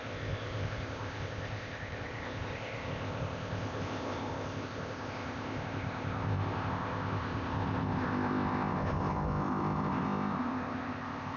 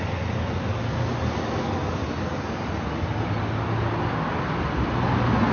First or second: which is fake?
first